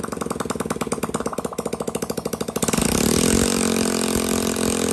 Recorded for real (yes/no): yes